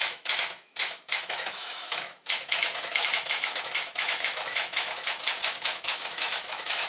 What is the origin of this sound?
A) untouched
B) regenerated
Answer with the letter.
B